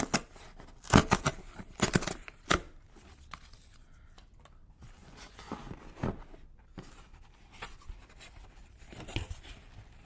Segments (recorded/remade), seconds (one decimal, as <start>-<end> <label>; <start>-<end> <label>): 0.0-5.0 recorded; 5.0-5.6 remade; 5.6-10.1 recorded